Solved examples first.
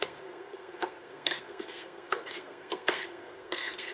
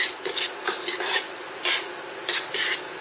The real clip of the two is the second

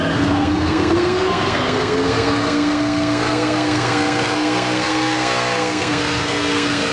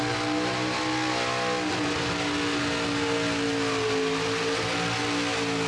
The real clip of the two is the second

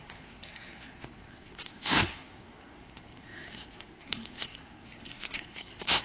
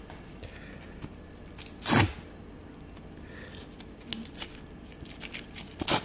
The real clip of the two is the second